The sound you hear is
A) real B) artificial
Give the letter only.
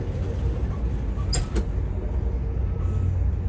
A